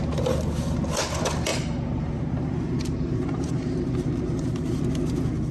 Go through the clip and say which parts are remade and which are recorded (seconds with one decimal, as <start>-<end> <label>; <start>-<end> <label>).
0.0-1.5 recorded; 1.5-4.8 remade; 4.8-5.5 recorded